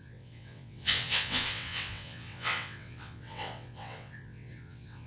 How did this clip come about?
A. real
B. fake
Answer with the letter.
B